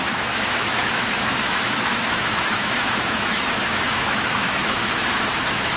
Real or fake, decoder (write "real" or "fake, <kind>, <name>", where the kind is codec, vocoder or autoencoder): fake, autoencoder, DAC-VAE